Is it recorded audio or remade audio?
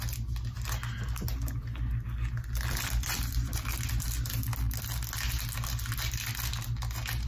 recorded